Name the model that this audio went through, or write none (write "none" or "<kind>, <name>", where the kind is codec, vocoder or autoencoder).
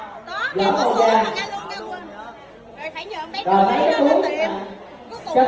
none